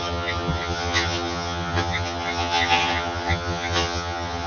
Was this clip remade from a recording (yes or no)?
yes